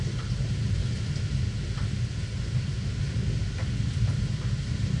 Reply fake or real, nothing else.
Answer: real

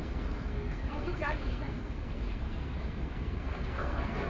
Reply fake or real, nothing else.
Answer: fake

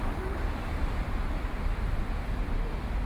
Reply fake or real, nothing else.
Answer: real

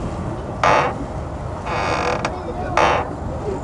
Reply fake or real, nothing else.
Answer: real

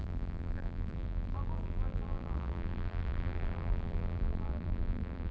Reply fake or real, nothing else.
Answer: fake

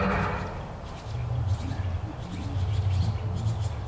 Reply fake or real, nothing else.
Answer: real